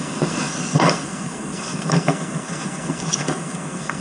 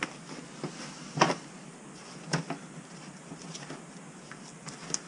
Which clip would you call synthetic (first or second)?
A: first